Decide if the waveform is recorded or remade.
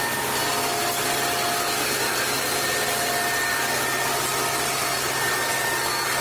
recorded